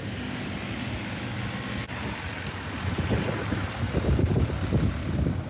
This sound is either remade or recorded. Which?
recorded